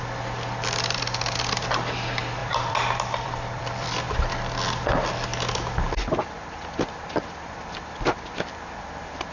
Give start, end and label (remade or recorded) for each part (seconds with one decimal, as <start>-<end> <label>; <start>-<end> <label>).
0.0-2.4 recorded; 2.4-4.3 remade; 4.3-9.3 recorded